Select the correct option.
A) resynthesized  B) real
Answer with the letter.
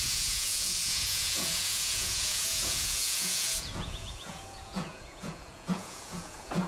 A